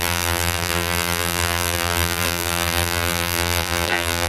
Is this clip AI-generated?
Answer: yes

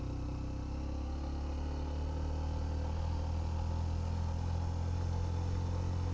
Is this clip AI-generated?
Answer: no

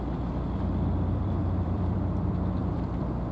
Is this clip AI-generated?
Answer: yes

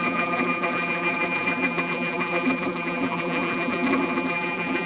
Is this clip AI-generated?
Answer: yes